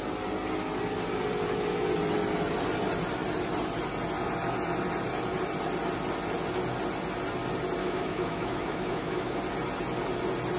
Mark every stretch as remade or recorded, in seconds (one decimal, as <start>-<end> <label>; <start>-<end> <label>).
0.0-7.8 recorded; 7.8-9.4 remade; 9.4-10.6 recorded